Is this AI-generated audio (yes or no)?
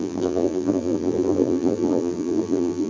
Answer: yes